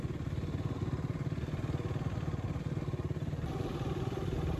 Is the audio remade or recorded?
recorded